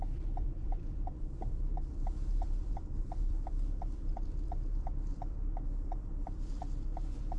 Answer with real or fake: fake